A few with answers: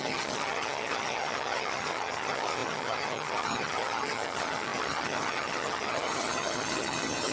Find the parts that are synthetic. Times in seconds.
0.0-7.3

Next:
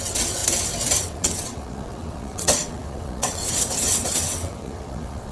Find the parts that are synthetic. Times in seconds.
0.0-0.4; 1.0-5.3

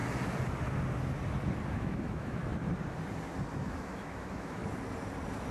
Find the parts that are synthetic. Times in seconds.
1.7-2.4; 3.5-4.6

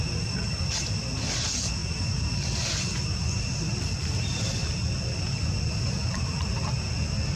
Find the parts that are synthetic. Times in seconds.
none

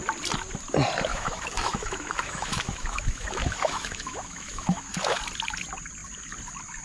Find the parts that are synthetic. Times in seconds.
1.1-5.2

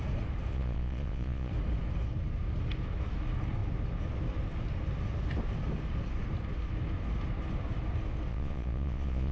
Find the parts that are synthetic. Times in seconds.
0.5-1.5; 8.3-9.3

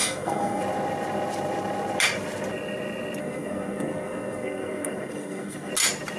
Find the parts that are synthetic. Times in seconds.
0.0-0.6; 3.2-5.7

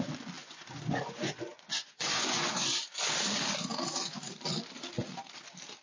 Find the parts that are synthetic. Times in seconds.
0.4-2.8